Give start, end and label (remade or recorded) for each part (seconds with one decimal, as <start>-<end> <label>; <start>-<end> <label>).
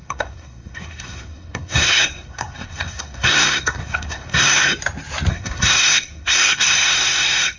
0.0-4.7 remade; 4.7-5.3 recorded; 5.3-7.6 remade